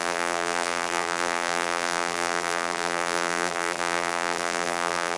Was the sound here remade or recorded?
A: remade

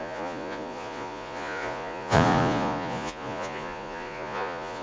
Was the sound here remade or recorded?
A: remade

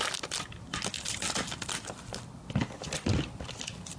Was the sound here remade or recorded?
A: recorded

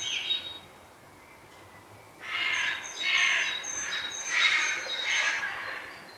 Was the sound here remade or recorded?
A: recorded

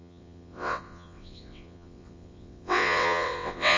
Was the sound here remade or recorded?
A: remade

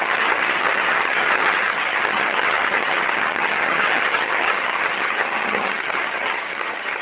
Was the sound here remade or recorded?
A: remade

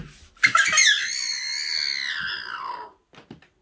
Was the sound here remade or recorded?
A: recorded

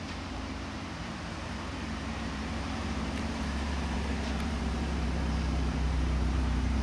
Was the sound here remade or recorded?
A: remade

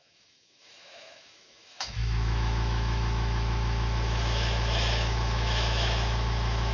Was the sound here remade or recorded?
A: remade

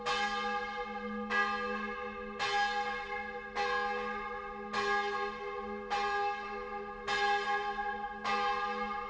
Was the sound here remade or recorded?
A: recorded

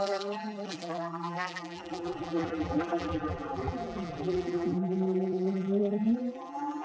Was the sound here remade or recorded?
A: remade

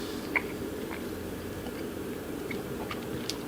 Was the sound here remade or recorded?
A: remade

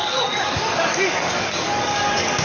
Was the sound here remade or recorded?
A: remade